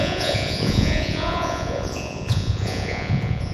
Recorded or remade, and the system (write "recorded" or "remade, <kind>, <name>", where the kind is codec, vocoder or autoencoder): remade, vocoder, Vocos